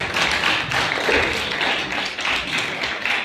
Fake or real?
real